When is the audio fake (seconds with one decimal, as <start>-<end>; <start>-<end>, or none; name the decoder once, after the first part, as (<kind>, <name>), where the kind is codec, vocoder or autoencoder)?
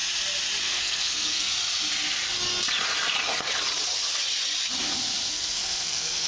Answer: 0.6-1.5 (codec, SNAC); 5.3-6.3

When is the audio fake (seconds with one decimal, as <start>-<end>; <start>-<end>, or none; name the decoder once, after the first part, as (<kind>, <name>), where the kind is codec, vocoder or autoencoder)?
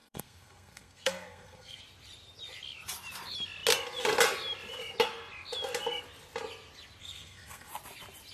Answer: 0.0-1.8 (codec, SNAC); 7.0-7.7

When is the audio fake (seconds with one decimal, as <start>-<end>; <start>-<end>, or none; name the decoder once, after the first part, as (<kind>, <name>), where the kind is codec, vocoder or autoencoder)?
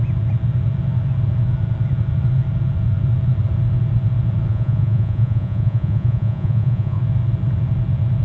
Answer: 4.5-7.0 (vocoder, Vocos)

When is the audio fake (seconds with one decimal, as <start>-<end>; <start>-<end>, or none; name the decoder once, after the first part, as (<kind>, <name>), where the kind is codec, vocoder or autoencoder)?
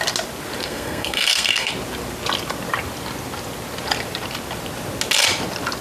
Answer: 0.6-1.7 (codec, SNAC)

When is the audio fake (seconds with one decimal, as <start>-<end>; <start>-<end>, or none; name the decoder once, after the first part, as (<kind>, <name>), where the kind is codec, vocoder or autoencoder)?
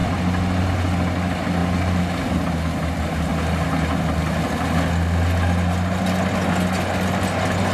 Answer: none